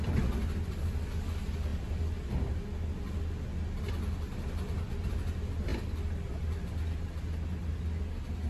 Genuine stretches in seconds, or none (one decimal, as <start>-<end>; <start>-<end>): 0.0-8.5